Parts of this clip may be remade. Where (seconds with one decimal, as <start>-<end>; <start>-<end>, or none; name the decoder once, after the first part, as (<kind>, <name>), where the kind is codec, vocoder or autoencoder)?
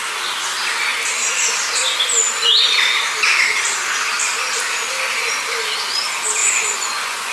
6.4-7.3 (vocoder, Vocos)